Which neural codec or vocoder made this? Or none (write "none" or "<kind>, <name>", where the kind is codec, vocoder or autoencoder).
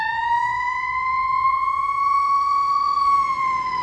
vocoder, Vocos